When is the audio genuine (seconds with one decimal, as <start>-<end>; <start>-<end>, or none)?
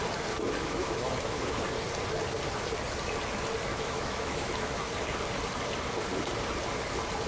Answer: 0.0-0.6; 1.6-3.7; 4.8-7.3